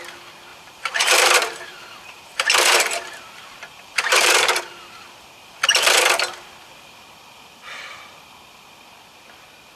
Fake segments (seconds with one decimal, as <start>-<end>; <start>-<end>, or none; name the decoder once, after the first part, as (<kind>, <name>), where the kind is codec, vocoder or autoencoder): 0.5-4.6 (vocoder, BigVGAN v2)